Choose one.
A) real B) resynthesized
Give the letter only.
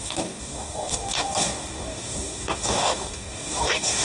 B